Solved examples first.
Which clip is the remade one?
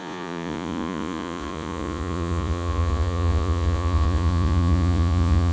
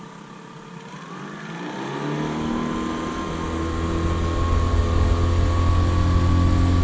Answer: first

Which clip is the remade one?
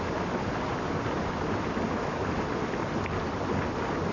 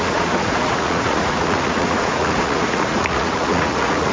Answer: second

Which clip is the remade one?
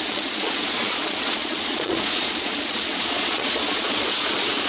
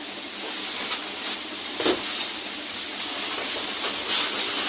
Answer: first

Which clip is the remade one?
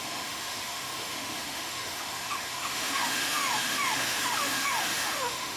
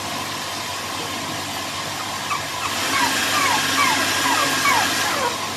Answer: first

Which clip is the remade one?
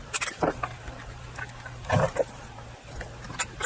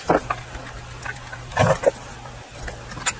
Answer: first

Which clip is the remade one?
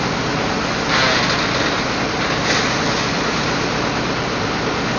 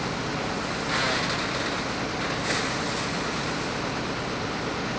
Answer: second